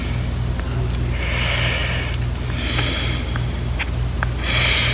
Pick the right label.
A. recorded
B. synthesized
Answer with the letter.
A